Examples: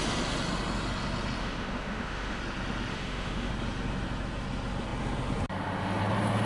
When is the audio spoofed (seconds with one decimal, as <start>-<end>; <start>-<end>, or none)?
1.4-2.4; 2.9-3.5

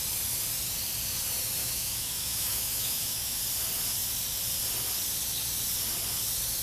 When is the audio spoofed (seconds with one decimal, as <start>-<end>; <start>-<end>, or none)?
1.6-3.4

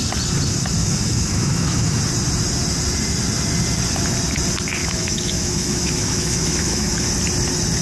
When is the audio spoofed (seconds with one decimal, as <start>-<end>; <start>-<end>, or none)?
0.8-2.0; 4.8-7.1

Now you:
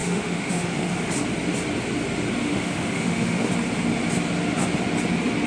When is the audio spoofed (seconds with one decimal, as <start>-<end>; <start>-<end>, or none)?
0.0-0.9; 2.4-3.5